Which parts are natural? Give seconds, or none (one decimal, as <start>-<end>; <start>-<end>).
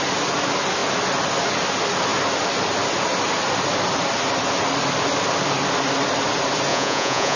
0.0-6.7